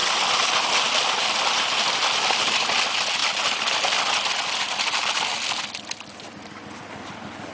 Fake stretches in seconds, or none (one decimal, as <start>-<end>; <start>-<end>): none